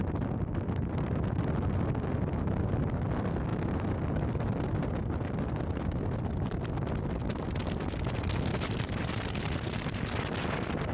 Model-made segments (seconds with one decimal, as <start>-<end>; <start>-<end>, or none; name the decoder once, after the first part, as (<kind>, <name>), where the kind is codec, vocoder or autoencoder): 8.5-10.0 (vocoder, BigVGAN v2)

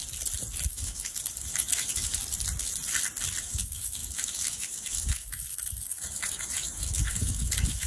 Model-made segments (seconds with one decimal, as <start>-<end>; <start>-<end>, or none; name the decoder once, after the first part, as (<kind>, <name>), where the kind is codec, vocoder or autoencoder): 0.7-2.2 (autoencoder, DAC-VAE); 3.4-7.9

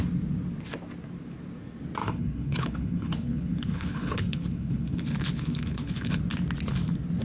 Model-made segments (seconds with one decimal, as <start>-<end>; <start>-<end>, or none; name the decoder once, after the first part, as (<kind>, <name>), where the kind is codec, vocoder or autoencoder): 2.0-6.2 (codec, HILCodec)